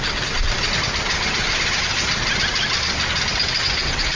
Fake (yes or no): no